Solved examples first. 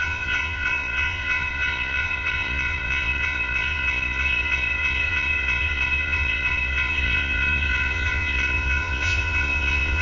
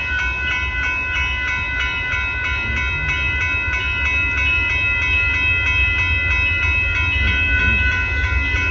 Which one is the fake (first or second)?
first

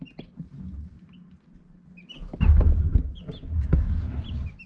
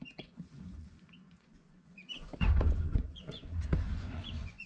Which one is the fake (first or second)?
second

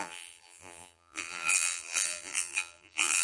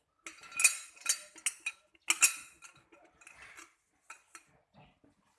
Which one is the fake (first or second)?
first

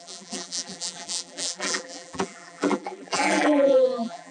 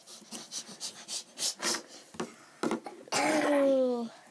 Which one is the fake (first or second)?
first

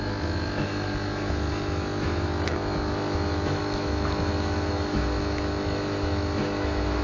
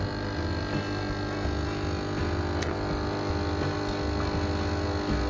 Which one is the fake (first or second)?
first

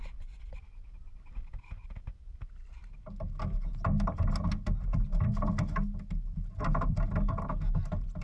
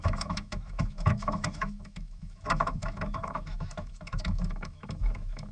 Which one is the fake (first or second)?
second